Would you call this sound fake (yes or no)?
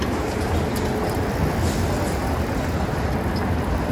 no